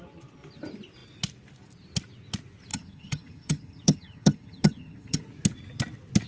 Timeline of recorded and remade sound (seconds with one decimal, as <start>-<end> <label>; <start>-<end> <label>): 0.0-2.7 recorded; 2.7-5.2 remade; 5.2-6.3 recorded